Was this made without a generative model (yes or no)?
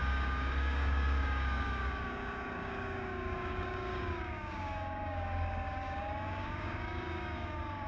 no